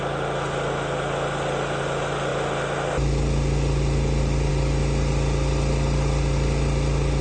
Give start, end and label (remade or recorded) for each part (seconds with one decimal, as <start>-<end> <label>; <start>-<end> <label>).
0.0-7.2 recorded

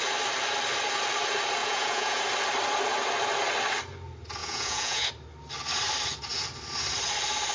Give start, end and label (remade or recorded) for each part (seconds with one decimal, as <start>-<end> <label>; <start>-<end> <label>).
0.0-1.6 recorded; 1.6-2.2 remade; 2.2-4.4 recorded; 4.4-5.1 remade; 5.1-7.5 recorded

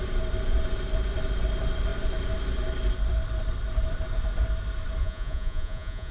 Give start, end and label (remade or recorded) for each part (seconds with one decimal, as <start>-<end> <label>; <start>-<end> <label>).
0.0-5.0 recorded; 5.0-6.1 remade

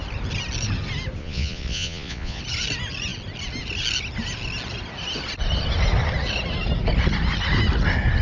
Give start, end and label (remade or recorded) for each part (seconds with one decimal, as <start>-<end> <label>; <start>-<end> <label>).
0.0-1.2 recorded; 1.2-2.4 remade; 2.4-8.2 recorded